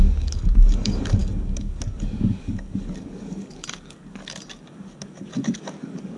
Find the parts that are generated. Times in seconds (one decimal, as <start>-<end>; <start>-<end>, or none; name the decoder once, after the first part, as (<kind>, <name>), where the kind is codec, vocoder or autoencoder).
0.0-6.2 (codec, DAC)